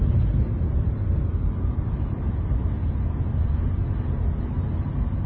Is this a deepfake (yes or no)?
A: no